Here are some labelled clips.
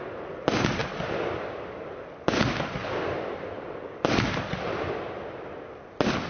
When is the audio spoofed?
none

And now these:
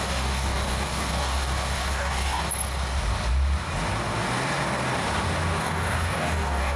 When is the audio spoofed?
0.0-2.5; 5.6-6.8

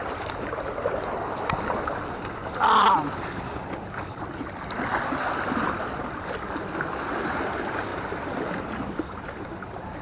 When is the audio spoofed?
none

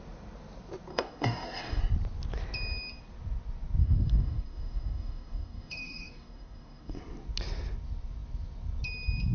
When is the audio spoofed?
0.9-1.8; 3.8-7.0

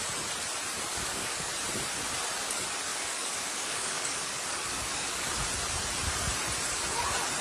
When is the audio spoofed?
0.9-1.5; 2.9-5.3

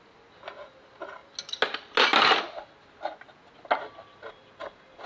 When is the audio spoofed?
none

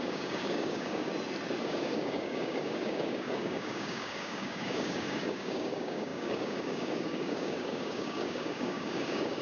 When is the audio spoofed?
0.0-1.1; 1.6-9.4

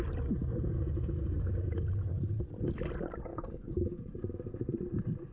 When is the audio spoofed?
3.3-4.0